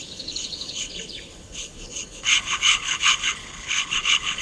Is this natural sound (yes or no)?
no